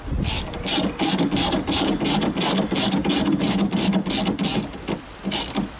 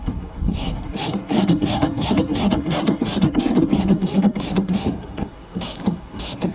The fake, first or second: second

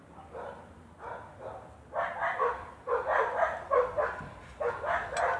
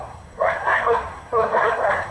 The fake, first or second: second